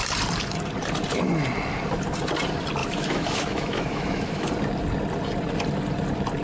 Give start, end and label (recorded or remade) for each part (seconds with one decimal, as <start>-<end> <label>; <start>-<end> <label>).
0.0-2.8 recorded; 2.8-4.5 remade; 4.5-6.4 recorded